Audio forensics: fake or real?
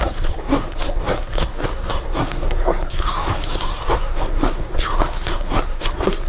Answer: fake